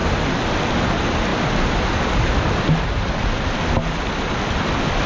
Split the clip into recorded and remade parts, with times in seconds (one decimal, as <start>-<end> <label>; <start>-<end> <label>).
0.0-5.1 recorded